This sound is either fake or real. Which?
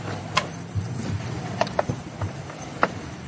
fake